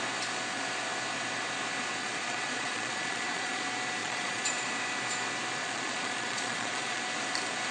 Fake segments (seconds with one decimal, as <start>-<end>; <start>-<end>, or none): 2.0-3.6; 4.0-4.5; 5.5-7.0